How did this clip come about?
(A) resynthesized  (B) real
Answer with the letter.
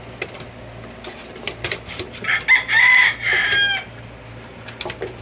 B